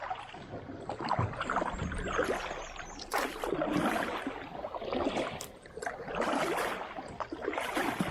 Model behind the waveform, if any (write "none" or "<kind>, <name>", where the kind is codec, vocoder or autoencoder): none